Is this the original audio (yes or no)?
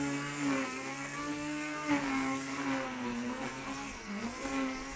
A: no